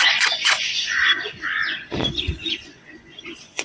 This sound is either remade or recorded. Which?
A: remade